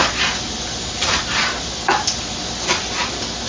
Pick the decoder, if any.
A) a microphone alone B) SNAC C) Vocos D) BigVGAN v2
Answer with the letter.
A